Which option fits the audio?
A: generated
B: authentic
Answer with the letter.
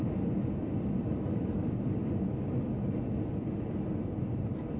B